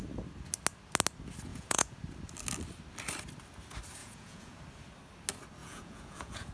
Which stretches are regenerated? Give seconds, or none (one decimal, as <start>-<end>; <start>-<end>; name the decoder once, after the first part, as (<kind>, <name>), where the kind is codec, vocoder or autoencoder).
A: 1.5-2.0 (vocoder, Vocos); 4.0-4.6; 5.6-6.5